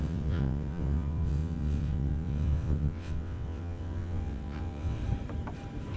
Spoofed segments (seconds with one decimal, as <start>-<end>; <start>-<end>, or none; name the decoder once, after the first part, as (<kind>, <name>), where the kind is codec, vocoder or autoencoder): 0.0-5.0 (vocoder, WaveNeXt)